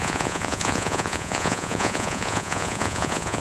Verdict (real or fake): fake